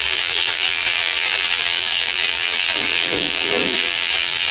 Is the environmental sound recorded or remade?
remade